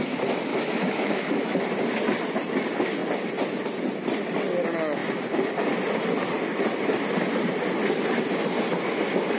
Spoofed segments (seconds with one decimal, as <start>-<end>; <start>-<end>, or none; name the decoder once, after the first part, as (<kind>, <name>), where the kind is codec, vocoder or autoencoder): 0.5-1.6 (autoencoder, DAC-VAE)